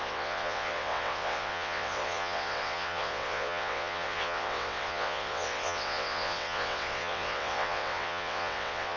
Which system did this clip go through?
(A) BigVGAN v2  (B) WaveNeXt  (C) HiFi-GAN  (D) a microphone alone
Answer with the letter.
B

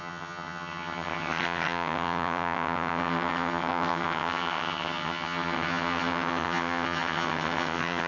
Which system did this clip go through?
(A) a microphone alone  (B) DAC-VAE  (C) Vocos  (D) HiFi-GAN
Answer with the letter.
D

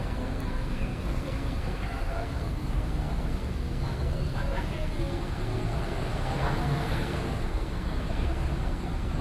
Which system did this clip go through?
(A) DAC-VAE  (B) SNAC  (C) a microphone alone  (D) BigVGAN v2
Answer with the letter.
B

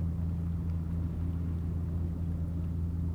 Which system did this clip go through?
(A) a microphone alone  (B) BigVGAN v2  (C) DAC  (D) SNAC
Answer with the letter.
A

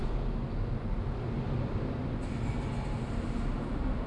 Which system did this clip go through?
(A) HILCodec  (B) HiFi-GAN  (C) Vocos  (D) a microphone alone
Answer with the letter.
D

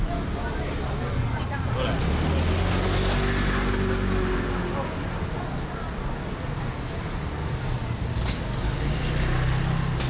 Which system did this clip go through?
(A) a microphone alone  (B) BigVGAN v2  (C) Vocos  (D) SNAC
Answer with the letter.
A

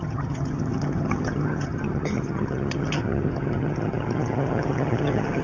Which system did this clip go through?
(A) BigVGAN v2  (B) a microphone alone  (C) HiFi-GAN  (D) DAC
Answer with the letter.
C